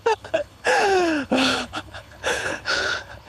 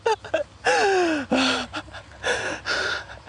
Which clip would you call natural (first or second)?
second